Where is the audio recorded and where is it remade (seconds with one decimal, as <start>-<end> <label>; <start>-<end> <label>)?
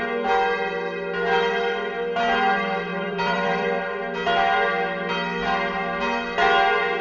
0.0-2.9 recorded; 2.9-3.8 remade; 3.8-7.0 recorded